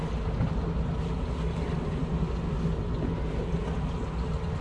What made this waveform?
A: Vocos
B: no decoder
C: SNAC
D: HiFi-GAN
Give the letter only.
B